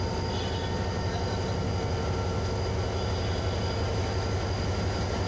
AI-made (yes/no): no